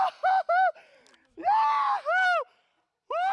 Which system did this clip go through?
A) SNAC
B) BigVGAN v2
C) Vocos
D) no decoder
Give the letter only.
D